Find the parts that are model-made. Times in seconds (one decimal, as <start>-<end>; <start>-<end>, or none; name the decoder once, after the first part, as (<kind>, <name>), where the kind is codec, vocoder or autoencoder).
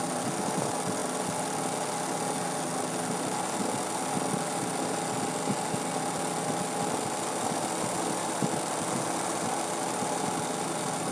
none